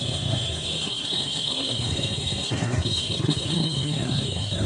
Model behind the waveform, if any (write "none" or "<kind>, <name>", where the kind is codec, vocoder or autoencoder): codec, SNAC